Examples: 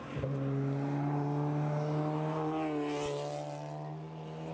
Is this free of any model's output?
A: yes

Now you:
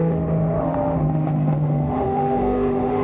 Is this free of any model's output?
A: no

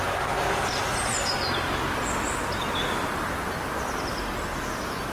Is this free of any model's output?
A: yes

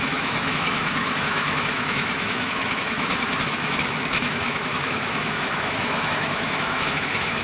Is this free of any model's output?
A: no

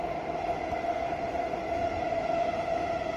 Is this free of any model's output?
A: yes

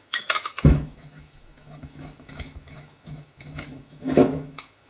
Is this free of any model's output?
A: no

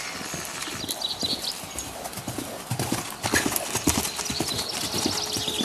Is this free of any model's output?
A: yes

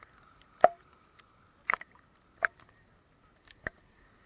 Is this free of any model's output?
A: yes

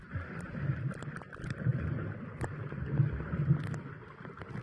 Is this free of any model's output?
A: yes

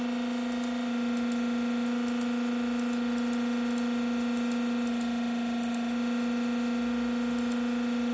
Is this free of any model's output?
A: yes